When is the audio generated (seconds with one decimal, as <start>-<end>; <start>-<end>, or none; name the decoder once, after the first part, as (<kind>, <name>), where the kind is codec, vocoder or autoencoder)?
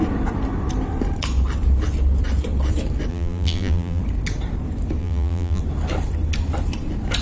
3.1-4.0 (vocoder, BigVGAN v2); 5.0-5.6